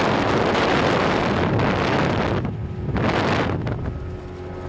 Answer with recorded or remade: recorded